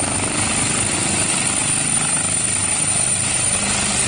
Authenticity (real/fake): real